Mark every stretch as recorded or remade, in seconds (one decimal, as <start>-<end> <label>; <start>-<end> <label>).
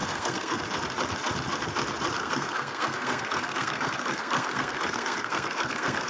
0.0-0.6 remade; 0.6-2.2 recorded; 2.2-6.1 remade